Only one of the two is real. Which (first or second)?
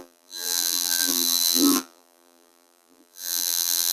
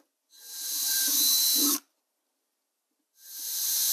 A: second